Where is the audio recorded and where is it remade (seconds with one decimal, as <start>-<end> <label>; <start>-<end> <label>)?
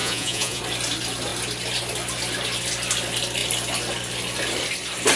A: 0.0-0.6 remade; 0.6-5.2 recorded